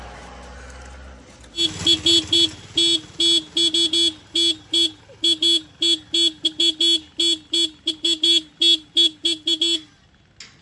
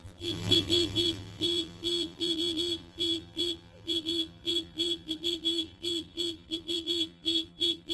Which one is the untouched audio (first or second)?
first